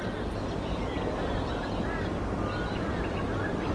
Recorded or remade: recorded